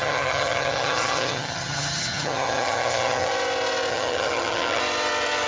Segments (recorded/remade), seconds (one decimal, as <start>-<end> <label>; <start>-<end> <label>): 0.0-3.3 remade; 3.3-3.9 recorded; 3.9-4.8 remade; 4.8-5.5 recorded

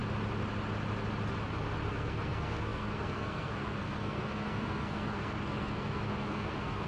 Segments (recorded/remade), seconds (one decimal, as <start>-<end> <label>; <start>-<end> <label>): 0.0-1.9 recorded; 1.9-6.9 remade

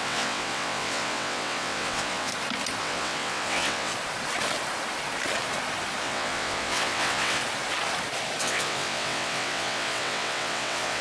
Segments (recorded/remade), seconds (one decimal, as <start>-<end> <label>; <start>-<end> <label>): 0.0-2.3 remade; 2.3-2.8 recorded; 2.8-3.9 remade; 3.9-6.0 recorded; 6.0-7.4 remade; 7.4-8.4 recorded; 8.4-11.0 remade